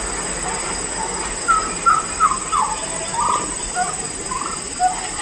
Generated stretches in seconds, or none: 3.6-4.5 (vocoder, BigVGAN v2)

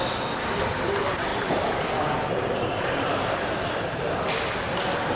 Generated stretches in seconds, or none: 1.3-4.4 (vocoder, BigVGAN v2)

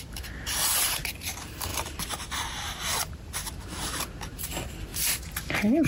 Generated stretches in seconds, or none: 1.7-3.5 (vocoder, BigVGAN v2)

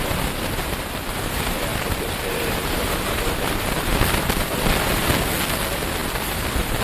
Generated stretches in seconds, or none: 1.7-2.5 (vocoder, BigVGAN v2)

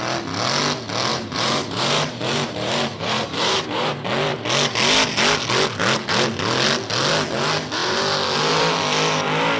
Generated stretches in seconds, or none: 1.1-3.9 (vocoder, BigVGAN v2)

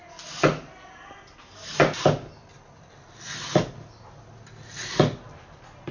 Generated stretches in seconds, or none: none